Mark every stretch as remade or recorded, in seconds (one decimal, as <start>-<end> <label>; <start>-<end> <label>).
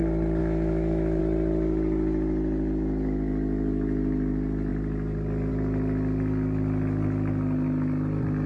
0.0-0.4 recorded; 0.4-1.2 remade; 1.2-8.5 recorded